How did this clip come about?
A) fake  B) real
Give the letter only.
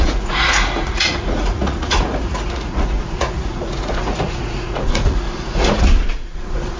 A